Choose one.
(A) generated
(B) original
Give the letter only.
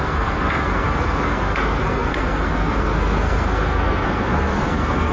A